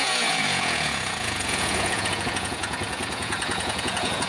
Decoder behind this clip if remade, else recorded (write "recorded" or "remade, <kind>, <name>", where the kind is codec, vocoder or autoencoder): remade, vocoder, Vocos